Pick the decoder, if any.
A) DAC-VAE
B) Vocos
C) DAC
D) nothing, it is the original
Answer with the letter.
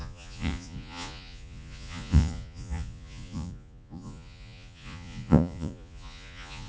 B